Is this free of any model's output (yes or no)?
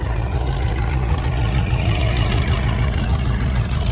no